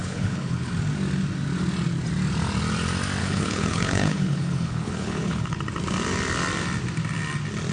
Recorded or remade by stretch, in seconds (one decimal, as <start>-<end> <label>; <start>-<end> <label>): 0.0-0.7 remade; 0.7-3.2 recorded; 3.2-5.6 remade; 5.6-7.7 recorded